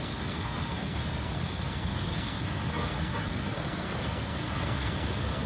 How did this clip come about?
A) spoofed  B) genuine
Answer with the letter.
A